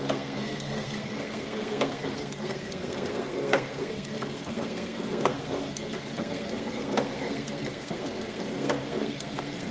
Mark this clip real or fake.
fake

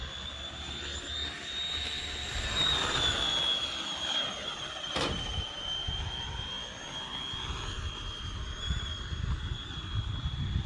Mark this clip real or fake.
real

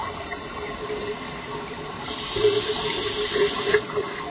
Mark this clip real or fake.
fake